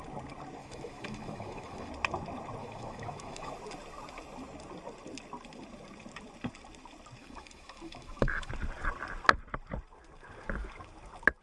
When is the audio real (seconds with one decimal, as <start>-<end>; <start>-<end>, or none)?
0.0-0.6; 1.9-2.6; 3.5-7.2; 8.5-11.4